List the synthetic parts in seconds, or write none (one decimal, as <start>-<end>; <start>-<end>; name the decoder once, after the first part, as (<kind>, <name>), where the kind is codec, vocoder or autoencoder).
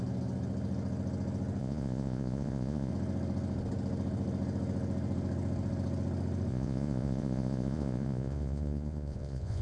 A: 1.6-2.9 (vocoder, Vocos); 6.5-9.6